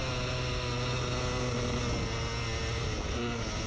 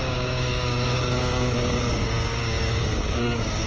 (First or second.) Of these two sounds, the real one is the first